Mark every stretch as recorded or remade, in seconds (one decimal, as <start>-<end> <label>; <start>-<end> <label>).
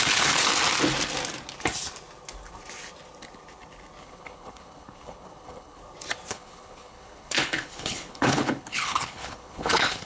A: 0.0-0.5 remade; 0.5-4.0 recorded; 4.0-5.8 remade; 5.8-6.3 recorded; 6.3-10.1 remade